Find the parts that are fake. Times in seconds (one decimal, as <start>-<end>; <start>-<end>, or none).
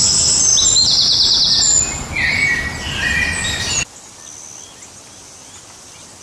none